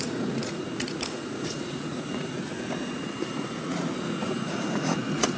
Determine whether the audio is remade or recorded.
remade